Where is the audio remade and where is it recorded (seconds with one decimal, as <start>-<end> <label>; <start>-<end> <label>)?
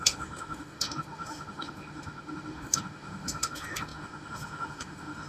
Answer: 0.0-5.3 remade